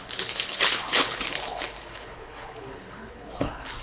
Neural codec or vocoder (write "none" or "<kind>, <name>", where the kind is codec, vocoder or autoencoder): codec, HILCodec